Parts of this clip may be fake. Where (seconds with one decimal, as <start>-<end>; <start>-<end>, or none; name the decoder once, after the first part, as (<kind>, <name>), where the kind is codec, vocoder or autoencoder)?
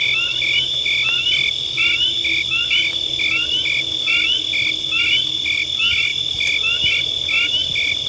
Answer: none